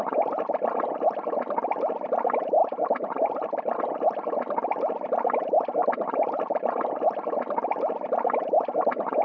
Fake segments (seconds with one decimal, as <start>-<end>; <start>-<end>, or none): 2.6-3.8; 5.8-7.0